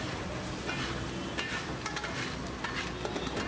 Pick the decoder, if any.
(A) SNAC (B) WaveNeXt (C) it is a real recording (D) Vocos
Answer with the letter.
C